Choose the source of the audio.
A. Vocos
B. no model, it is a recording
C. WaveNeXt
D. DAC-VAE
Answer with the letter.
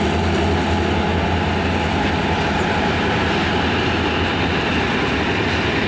B